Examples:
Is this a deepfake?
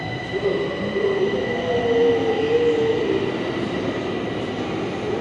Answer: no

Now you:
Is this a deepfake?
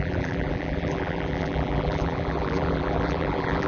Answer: yes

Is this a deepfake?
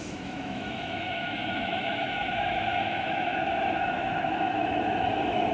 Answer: yes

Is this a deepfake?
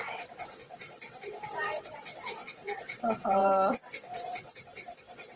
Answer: yes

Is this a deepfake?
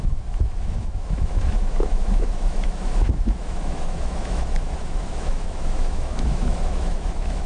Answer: yes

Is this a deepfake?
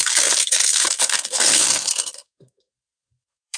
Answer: yes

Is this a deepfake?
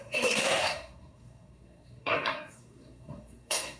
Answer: yes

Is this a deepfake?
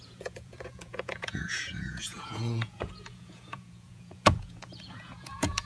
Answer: yes